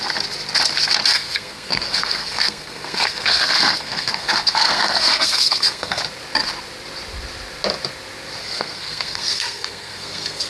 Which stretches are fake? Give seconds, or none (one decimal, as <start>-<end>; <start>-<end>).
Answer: 1.1-6.0; 8.4-10.5